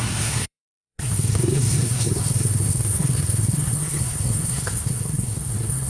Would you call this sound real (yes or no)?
no